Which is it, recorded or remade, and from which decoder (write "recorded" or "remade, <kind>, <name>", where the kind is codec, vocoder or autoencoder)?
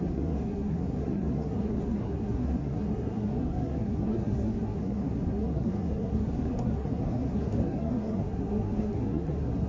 remade, codec, SNAC